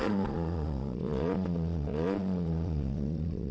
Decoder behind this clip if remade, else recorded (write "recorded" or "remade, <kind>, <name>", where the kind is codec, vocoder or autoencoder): remade, vocoder, Vocos